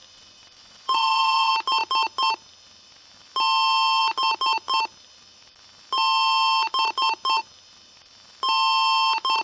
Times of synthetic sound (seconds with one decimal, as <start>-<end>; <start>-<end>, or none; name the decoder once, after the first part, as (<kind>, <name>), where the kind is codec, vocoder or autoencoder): 0.0-1.5 (vocoder, Vocos)